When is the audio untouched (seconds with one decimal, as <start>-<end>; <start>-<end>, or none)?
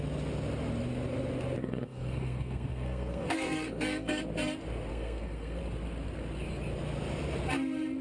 0.0-1.6; 4.2-4.9; 5.6-8.0